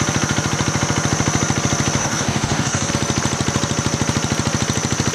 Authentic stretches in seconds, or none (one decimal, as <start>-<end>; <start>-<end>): 0.0-2.0; 2.9-5.1